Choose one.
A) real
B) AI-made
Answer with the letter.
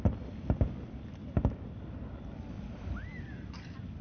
A